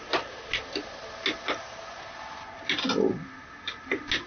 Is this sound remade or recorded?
recorded